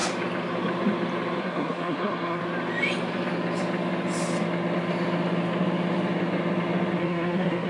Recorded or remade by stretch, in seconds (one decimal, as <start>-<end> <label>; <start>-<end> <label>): 0.0-1.4 recorded; 1.4-2.4 remade; 2.4-7.0 recorded; 7.0-7.7 remade